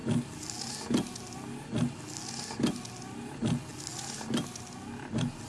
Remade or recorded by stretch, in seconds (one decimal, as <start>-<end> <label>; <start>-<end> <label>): 0.0-5.5 recorded